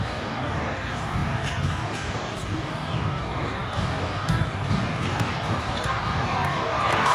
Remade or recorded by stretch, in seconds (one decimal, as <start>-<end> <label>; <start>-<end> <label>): 0.0-7.1 remade